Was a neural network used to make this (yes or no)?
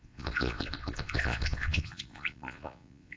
yes